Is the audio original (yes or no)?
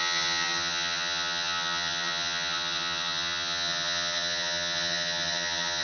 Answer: no